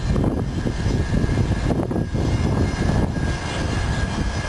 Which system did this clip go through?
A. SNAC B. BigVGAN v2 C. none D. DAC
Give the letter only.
C